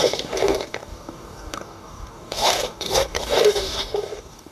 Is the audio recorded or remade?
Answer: remade